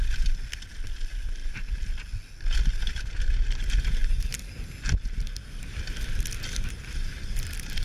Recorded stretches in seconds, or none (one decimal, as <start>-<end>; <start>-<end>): 0.0-7.8